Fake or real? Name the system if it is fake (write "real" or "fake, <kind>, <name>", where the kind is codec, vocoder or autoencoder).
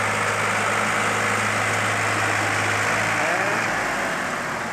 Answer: real